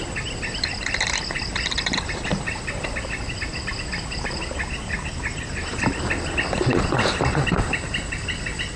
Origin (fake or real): real